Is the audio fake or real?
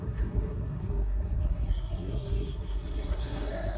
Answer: fake